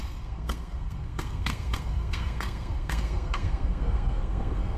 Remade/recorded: remade